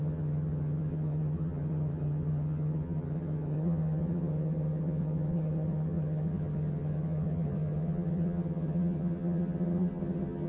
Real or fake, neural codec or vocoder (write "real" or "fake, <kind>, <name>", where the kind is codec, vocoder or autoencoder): fake, vocoder, HiFi-GAN